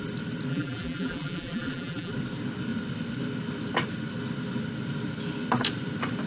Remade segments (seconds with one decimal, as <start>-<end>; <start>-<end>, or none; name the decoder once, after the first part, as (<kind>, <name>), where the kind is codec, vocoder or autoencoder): 0.5-2.1 (vocoder, BigVGAN v2)